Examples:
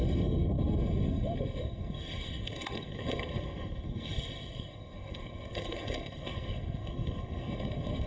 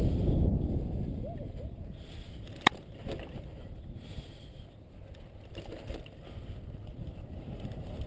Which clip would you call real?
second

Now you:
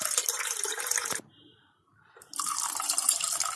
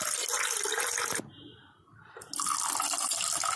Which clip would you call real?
second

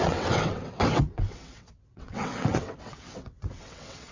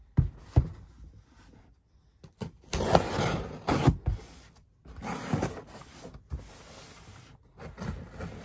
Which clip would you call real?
second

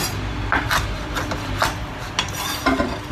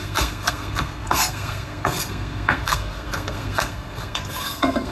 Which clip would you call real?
first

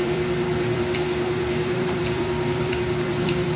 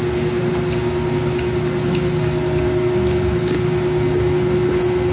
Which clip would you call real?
second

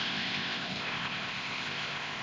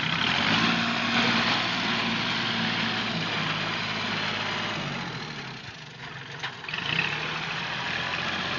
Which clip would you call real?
second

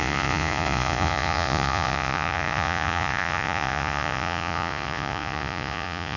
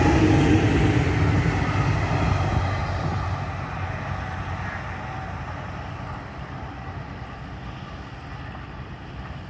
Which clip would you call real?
second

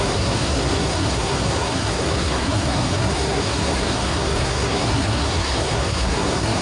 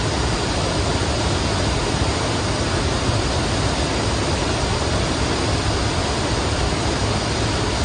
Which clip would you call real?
second